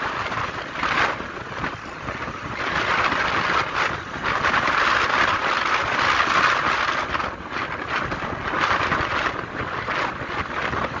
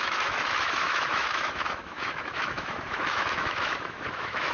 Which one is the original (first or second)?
first